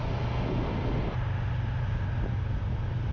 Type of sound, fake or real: real